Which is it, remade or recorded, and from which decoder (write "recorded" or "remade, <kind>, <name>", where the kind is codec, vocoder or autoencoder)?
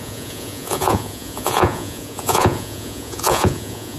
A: remade, vocoder, Vocos